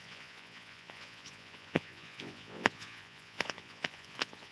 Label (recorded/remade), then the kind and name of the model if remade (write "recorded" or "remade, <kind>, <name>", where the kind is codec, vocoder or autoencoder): remade, vocoder, Vocos